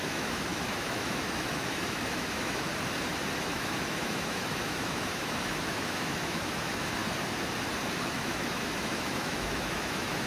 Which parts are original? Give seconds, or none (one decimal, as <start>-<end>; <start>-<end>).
2.7-3.5; 7.0-7.9